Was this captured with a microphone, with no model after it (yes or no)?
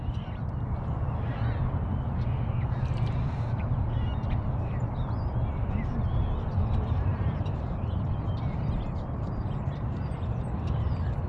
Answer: yes